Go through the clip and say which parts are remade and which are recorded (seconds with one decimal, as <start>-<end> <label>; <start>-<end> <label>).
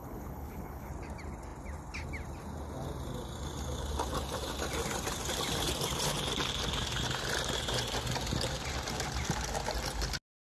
0.0-0.9 remade; 0.9-10.4 recorded